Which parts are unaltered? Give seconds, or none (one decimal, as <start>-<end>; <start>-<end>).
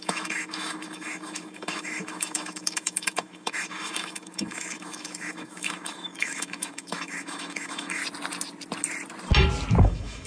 8.0-9.8